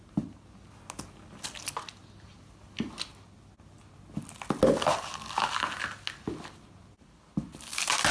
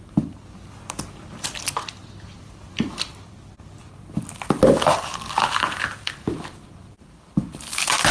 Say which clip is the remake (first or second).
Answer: second